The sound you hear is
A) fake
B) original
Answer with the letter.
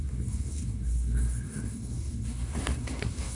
A